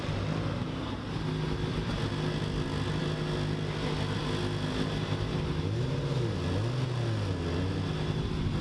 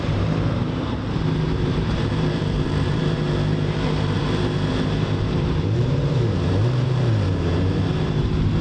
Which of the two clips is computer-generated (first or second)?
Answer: second